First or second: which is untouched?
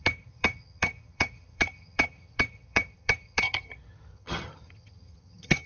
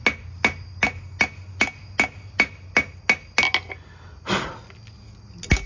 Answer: second